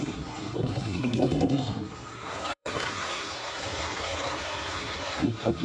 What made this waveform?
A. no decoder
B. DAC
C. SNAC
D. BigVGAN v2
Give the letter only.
C